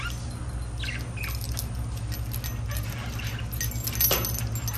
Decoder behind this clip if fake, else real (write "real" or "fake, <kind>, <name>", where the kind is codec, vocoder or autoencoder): real